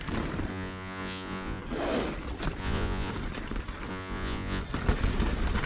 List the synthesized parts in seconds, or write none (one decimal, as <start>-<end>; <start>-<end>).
0.5-1.6; 2.6-3.1; 3.9-4.6